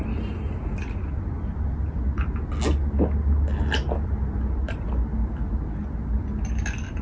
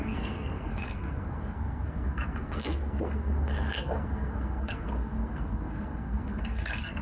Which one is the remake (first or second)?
second